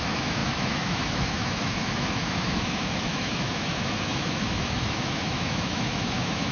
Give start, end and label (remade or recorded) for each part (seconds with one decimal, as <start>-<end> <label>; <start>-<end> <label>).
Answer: 0.0-6.5 remade